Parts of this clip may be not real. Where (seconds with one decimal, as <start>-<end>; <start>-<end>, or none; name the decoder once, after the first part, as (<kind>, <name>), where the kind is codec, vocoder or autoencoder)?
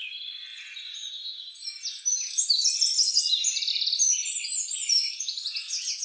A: none